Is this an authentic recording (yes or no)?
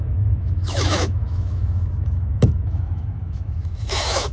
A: no